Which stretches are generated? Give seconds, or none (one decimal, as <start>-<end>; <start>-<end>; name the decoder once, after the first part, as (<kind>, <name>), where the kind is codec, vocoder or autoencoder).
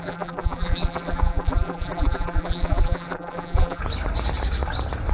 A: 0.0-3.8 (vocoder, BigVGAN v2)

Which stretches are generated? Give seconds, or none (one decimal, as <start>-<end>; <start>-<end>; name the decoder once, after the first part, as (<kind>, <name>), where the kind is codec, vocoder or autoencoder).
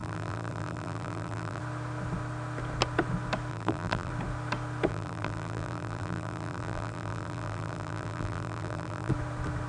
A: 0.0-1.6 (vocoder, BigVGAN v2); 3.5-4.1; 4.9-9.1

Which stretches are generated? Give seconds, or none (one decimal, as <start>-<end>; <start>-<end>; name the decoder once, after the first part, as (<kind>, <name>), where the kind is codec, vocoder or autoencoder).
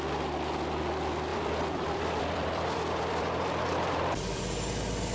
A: 1.3-4.4 (vocoder, BigVGAN v2)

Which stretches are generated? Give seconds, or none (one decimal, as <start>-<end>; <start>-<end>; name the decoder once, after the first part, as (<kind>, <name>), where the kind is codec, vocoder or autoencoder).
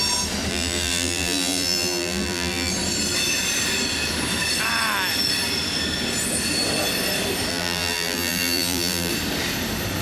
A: 0.5-2.7 (vocoder, BigVGAN v2); 7.5-9.1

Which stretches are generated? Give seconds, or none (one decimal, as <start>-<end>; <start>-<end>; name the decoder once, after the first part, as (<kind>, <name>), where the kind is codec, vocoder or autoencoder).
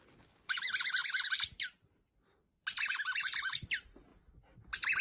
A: 1.0-3.2 (vocoder, BigVGAN v2)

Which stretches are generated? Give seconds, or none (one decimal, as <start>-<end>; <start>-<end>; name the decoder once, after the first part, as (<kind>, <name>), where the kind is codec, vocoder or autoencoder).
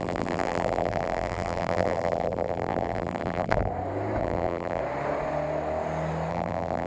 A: 0.0-3.7 (vocoder, BigVGAN v2); 4.2-4.8; 6.3-6.9